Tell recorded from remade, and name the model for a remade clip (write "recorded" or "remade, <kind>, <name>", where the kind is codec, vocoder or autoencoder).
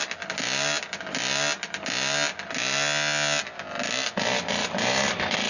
recorded